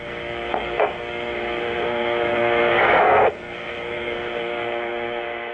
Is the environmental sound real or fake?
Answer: fake